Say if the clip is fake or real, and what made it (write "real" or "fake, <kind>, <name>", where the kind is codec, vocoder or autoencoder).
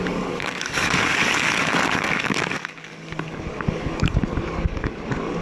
fake, codec, DAC